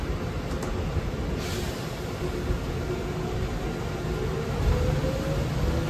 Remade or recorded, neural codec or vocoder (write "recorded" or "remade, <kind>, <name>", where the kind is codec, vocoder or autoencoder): recorded